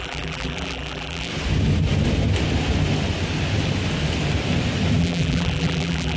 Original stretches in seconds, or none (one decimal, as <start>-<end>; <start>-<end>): 1.3-5.0